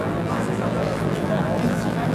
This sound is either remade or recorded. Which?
remade